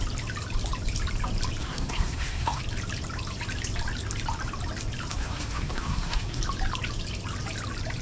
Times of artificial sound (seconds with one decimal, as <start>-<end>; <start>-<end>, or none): 1.6-2.6; 5.1-6.4